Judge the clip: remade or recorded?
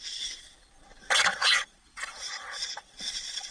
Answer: remade